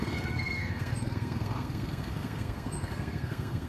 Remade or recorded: remade